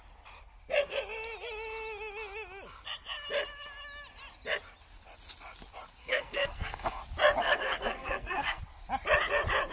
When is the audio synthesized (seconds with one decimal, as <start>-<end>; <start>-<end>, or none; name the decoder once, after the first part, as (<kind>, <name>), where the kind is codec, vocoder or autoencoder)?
6.0-7.0 (codec, SNAC); 7.4-8.6